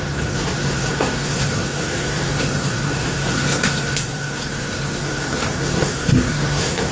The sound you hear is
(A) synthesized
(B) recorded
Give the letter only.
A